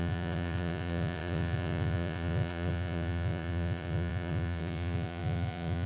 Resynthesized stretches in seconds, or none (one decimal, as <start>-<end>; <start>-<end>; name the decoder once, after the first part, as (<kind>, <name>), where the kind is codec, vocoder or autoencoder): 0.0-5.9 (vocoder, Vocos)